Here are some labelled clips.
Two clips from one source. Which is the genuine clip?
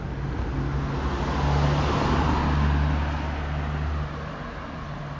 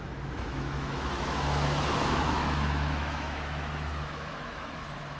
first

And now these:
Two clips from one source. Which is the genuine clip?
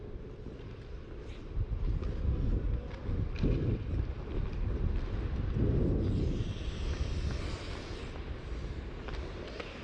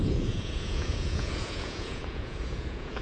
first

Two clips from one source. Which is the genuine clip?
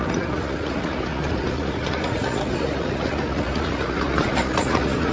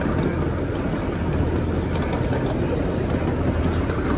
second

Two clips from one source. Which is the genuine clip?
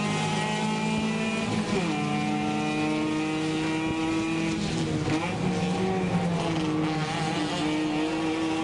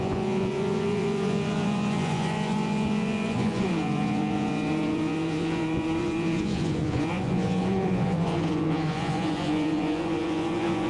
first